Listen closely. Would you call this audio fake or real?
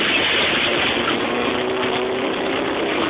real